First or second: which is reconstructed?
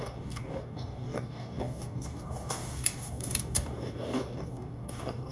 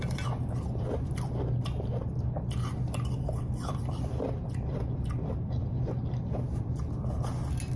first